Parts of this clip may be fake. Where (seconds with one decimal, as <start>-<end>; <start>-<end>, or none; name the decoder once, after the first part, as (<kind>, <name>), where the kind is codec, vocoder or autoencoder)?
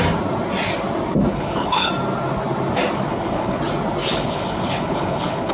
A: 1.3-1.9 (codec, HILCodec); 3.1-3.6; 4.0-5.5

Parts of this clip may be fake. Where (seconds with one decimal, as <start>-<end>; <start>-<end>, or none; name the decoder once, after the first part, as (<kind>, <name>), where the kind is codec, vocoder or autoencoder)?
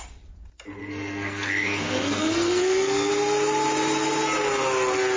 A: 0.8-3.1 (codec, SNAC)